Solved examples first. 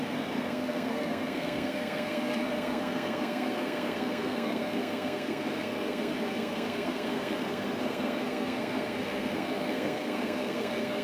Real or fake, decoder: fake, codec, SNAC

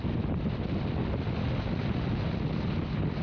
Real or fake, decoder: real